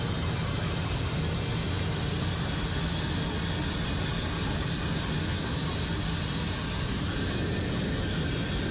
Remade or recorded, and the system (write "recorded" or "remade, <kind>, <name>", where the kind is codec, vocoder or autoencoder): recorded